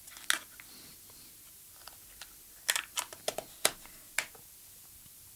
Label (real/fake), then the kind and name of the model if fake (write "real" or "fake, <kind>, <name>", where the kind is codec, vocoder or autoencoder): real